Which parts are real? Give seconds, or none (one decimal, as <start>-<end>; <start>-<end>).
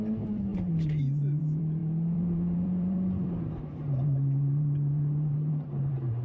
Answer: none